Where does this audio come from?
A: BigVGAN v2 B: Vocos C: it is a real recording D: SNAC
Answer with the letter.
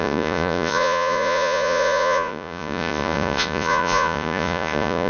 B